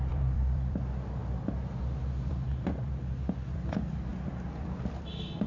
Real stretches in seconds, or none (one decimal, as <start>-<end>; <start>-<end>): 1.2-1.8